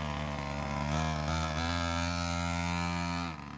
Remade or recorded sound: recorded